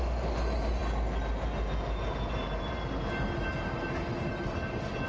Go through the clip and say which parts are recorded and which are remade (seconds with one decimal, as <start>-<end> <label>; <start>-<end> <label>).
0.0-5.1 recorded